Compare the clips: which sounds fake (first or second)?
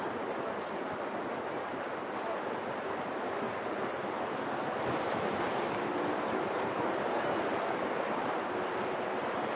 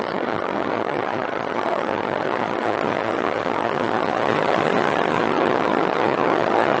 second